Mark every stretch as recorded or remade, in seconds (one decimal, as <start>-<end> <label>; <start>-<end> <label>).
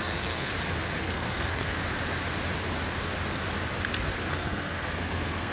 0.0-0.5 remade; 0.5-1.0 recorded; 1.0-1.8 remade; 1.8-4.3 recorded; 4.3-5.5 remade